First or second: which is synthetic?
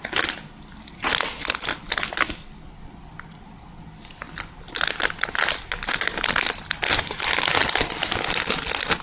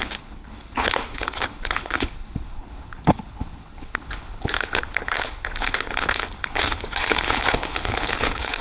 second